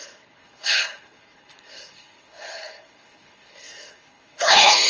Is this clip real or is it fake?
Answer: fake